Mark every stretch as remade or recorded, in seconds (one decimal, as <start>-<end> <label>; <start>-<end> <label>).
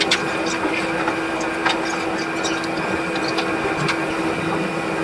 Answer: 0.0-5.0 recorded